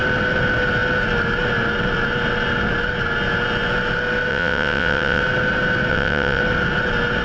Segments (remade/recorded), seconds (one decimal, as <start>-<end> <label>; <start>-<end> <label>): 0.0-4.3 recorded; 4.3-5.2 remade; 5.2-5.9 recorded; 5.9-6.4 remade; 6.4-7.2 recorded